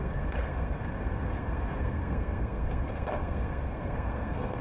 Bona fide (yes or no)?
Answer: no